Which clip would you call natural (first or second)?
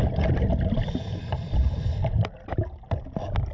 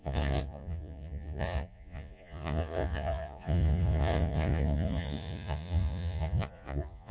first